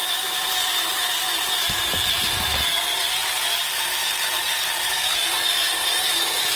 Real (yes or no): yes